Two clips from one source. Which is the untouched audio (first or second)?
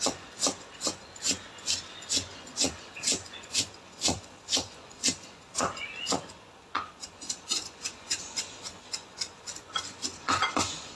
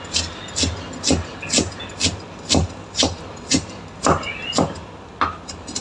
second